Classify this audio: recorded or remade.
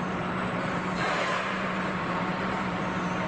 remade